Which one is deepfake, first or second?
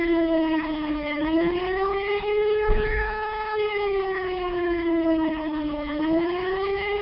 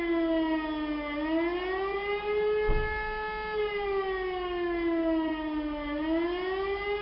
first